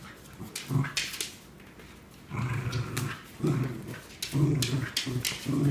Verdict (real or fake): real